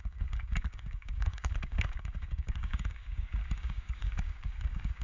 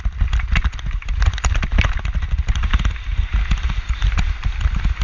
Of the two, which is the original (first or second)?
second